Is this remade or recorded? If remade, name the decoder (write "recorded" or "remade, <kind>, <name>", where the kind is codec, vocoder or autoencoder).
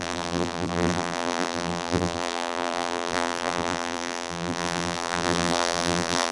remade, vocoder, BigVGAN v2